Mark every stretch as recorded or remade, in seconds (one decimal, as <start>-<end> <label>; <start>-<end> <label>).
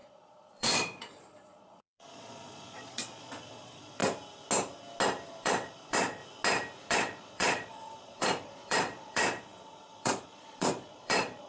0.0-4.0 remade; 4.0-5.3 recorded; 5.3-6.2 remade; 6.2-6.9 recorded; 6.9-11.5 remade